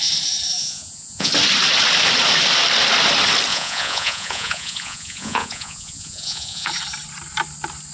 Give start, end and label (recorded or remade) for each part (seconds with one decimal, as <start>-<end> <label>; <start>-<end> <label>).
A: 0.0-0.6 recorded; 0.6-1.3 remade; 1.3-3.5 recorded; 3.5-6.7 remade; 6.7-7.9 recorded